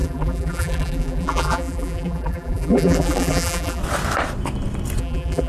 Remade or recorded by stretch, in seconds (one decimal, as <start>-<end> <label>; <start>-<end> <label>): 0.0-3.8 remade; 3.8-5.0 recorded; 5.0-5.5 remade